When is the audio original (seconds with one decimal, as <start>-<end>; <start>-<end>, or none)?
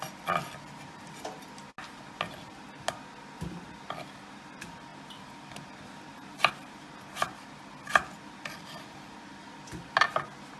0.0-10.6